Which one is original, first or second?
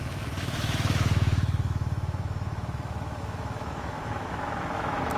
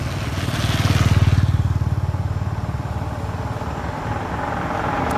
second